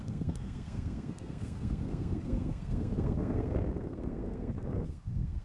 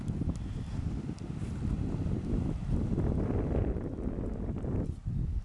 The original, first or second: second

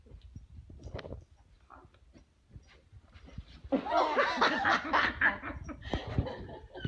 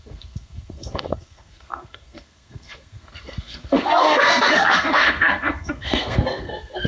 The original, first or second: first